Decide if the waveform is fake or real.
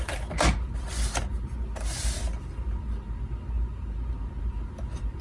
real